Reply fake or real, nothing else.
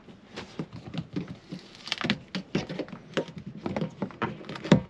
real